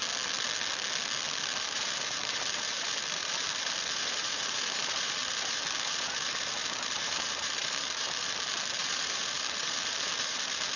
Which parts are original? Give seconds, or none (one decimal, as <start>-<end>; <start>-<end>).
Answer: 0.0-1.6